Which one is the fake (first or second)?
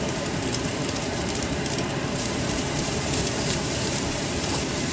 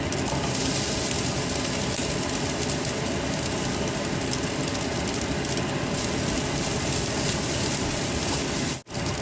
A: first